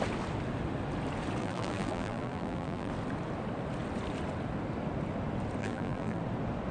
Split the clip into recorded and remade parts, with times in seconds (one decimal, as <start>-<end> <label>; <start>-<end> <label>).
0.0-1.4 recorded; 1.4-2.9 remade; 2.9-5.6 recorded; 5.6-6.2 remade; 6.2-6.7 recorded